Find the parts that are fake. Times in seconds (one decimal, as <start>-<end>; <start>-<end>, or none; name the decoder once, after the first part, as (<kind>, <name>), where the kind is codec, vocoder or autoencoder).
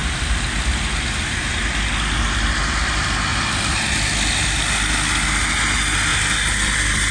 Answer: 0.0-1.6 (vocoder, BigVGAN v2); 3.3-3.8; 6.1-7.1